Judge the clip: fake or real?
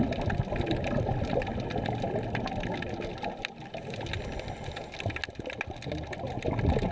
real